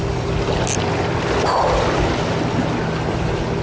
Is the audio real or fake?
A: real